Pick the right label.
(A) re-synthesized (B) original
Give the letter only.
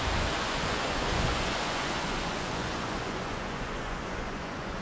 A